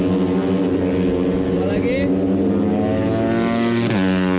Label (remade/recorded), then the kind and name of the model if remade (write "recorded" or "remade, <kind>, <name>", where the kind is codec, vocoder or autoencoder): recorded